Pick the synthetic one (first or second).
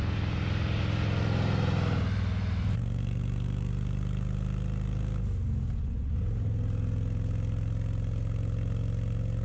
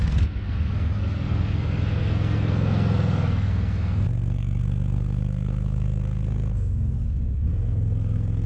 second